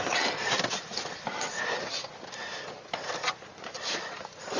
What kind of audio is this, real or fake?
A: real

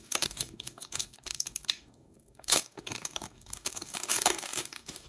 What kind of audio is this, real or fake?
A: fake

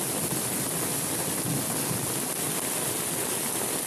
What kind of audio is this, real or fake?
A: real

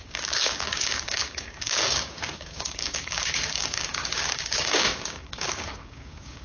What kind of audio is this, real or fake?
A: fake